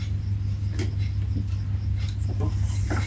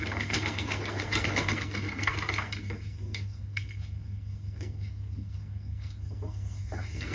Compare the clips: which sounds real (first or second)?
first